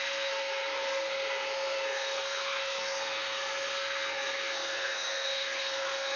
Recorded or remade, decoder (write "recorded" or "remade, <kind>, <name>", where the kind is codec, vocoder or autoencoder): remade, codec, SNAC